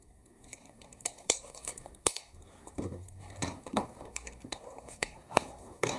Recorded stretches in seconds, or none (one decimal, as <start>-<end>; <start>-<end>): none